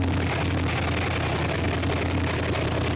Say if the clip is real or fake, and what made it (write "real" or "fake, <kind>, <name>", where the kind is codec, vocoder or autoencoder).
real